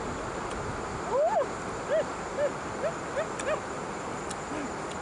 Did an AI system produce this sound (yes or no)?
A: no